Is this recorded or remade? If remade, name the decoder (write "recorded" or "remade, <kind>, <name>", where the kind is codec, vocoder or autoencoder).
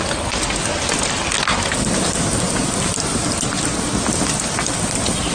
recorded